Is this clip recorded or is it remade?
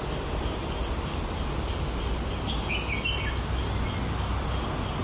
recorded